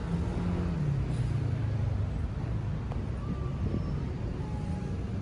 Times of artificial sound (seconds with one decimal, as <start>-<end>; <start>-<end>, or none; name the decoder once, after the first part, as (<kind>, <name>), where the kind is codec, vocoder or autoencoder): none

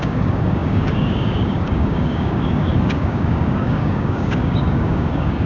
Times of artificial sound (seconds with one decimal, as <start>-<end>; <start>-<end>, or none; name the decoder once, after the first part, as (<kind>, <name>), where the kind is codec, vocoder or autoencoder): 0.0-5.5 (codec, DAC)

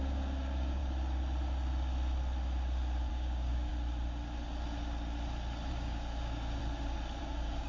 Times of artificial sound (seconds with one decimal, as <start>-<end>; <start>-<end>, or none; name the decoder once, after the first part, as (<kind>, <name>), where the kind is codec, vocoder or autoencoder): 0.0-0.8 (codec, DAC); 3.1-3.7; 5.7-6.6; 7.2-7.7

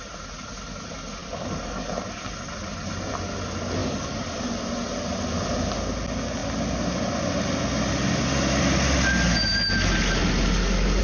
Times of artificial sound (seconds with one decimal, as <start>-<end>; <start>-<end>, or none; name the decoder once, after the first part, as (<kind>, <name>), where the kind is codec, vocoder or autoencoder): 1.2-1.9 (codec, DAC); 3.8-4.4

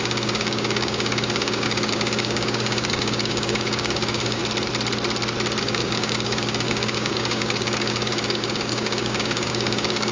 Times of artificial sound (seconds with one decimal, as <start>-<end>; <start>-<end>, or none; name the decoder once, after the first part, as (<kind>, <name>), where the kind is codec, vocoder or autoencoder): 0.0-4.4 (codec, DAC); 5.6-10.1

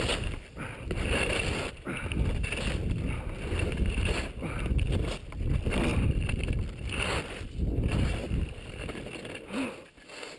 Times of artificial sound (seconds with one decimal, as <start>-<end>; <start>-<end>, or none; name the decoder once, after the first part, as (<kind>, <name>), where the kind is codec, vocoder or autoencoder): none

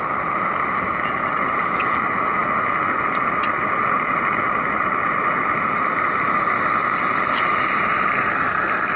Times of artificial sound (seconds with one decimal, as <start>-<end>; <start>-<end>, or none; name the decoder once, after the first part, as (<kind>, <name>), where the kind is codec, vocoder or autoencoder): none

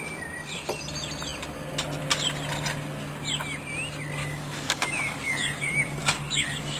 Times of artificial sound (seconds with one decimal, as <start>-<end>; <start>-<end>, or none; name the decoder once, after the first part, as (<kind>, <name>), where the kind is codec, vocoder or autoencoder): 4.2-6.8 (codec, DAC)